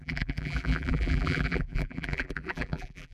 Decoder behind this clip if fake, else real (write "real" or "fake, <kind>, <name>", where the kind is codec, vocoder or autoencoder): fake, vocoder, BigVGAN v2